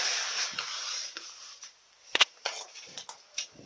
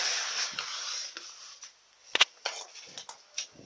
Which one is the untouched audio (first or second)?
second